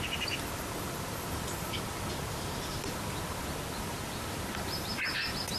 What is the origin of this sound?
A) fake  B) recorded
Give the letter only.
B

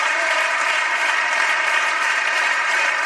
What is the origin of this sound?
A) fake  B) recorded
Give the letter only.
A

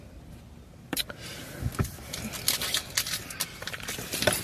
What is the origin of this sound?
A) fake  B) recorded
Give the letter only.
A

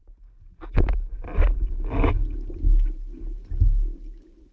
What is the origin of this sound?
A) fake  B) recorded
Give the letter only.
B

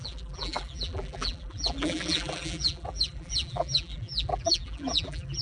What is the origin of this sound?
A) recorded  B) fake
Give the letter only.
B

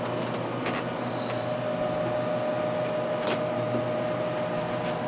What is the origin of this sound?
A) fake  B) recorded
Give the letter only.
B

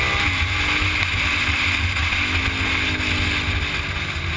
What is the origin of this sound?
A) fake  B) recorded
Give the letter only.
B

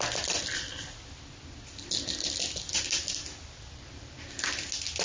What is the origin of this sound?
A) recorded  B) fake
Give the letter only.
A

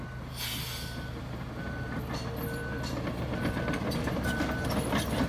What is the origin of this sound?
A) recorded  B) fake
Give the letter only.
A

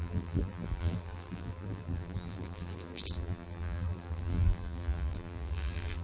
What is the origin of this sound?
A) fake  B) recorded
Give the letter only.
A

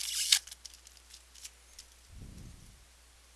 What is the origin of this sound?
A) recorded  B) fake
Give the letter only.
A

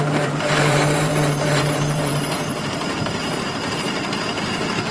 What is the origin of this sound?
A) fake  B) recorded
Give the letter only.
A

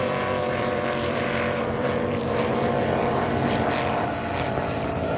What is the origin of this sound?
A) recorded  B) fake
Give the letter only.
B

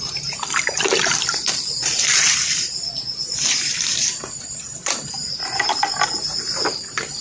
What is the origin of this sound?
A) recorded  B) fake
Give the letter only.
B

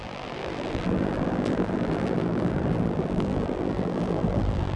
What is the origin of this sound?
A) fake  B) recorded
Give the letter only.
A